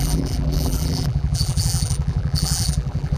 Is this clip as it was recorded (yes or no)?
no